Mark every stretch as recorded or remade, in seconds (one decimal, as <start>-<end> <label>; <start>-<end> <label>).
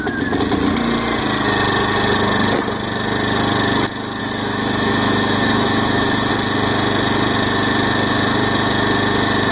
0.0-4.2 recorded; 4.2-6.3 remade; 6.3-9.5 recorded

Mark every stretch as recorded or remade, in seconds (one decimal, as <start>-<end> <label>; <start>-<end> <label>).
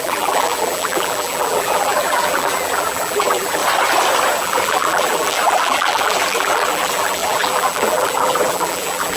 0.0-3.6 remade; 3.6-4.4 recorded; 4.4-9.2 remade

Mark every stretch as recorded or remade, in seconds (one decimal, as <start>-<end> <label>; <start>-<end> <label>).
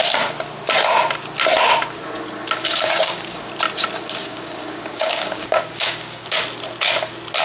0.0-2.6 recorded; 2.6-3.5 remade; 3.5-4.2 recorded; 4.2-6.4 remade; 6.4-7.4 recorded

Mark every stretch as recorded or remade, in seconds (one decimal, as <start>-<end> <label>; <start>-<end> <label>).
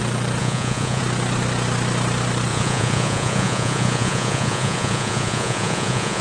0.0-0.4 recorded; 0.4-1.0 remade; 1.0-2.5 recorded; 2.5-6.2 remade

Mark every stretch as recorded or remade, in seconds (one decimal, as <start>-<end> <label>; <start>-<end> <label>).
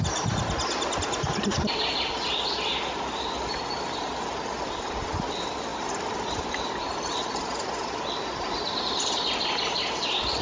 0.0-10.4 recorded